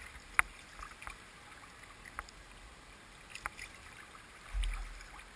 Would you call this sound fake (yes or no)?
no